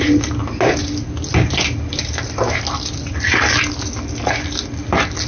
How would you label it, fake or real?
real